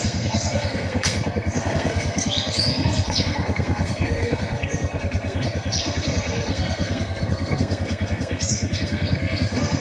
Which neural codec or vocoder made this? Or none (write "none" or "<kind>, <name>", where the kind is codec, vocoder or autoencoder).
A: codec, SNAC